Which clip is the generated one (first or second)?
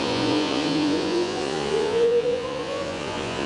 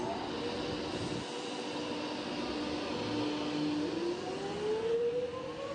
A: first